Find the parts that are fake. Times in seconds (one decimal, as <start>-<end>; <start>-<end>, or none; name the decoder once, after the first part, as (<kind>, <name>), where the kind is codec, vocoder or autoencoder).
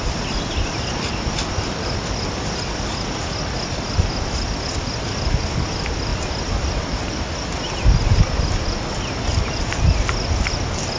none